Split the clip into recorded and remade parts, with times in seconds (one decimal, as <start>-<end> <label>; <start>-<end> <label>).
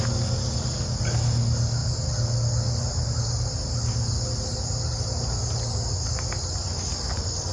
0.0-7.5 recorded